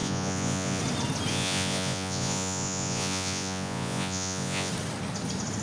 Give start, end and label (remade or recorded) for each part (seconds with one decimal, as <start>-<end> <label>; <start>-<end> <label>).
0.0-0.8 remade; 0.8-1.3 recorded; 1.3-4.7 remade; 4.7-5.6 recorded

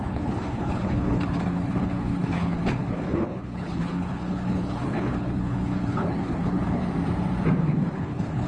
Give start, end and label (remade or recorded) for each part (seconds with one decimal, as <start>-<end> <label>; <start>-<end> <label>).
0.0-6.8 remade; 6.8-7.6 recorded; 7.6-8.5 remade